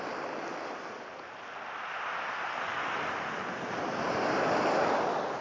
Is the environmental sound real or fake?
real